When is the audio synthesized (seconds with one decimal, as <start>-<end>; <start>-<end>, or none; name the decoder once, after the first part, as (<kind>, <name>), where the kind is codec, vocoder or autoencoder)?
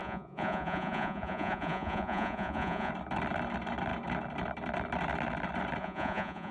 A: 0.0-2.9 (vocoder, Vocos); 5.8-6.5